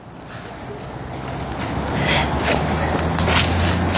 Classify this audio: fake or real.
real